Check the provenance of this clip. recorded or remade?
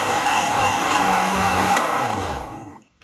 remade